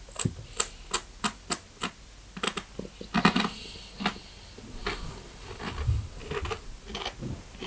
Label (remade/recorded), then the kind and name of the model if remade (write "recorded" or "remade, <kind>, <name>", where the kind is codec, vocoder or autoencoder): recorded